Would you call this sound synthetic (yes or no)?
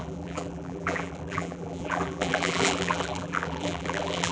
yes